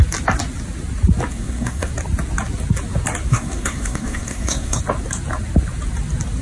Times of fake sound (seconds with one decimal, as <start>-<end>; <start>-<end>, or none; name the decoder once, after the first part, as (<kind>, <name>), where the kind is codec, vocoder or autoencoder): 1.3-1.9 (codec, SNAC); 3.3-4.8